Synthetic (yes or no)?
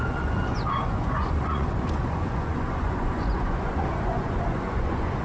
yes